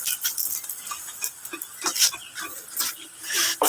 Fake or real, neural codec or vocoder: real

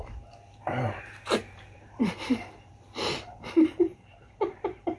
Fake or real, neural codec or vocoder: fake, vocoder, BigVGAN v2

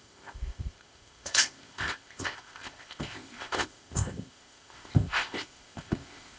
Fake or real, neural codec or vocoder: fake, codec, ZipCodec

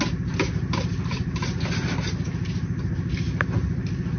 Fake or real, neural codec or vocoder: real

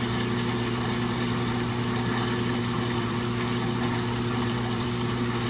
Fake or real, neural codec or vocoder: fake, vocoder, BigVGAN v2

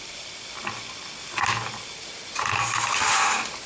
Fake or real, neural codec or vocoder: real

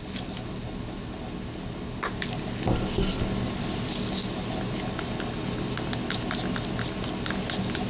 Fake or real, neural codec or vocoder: real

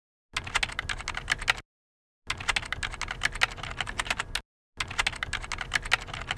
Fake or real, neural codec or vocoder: real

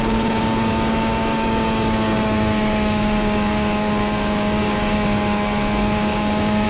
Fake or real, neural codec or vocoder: fake, codec, DAC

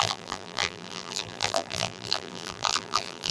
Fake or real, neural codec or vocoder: fake, vocoder, BigVGAN v2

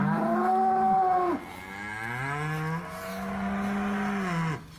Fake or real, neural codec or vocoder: real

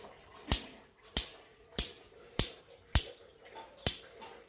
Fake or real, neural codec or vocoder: fake, vocoder, BigVGAN v2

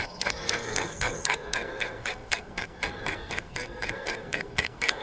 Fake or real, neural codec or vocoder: fake, codec, SNAC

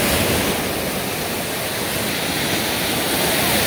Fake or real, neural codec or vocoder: real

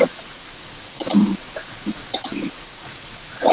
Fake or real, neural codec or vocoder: fake, vocoder, Vocos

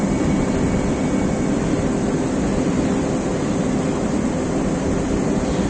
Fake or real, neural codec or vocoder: real